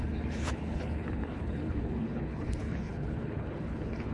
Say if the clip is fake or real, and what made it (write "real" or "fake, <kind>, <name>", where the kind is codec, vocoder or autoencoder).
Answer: fake, codec, HILCodec